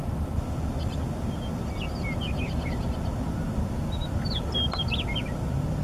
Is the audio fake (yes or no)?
no